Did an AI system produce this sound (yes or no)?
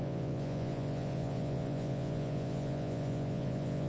yes